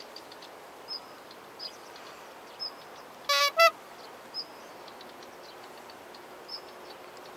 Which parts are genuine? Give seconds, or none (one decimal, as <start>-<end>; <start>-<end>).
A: 0.0-7.4